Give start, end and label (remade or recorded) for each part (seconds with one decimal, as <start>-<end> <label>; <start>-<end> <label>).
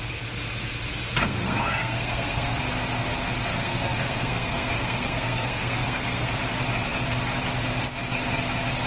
0.0-1.2 recorded; 1.2-2.6 remade; 2.6-3.5 recorded; 3.5-6.4 remade; 6.4-8.9 recorded